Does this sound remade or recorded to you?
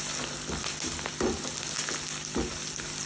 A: recorded